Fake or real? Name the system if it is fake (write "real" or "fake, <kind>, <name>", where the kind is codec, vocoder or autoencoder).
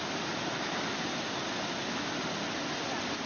real